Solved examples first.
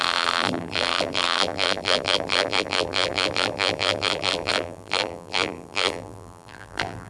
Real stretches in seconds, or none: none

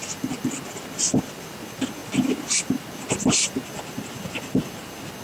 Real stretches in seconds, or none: 0.0-5.2